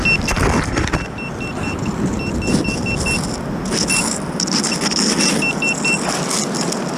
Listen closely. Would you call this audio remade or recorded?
recorded